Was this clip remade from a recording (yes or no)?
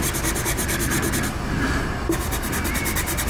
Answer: no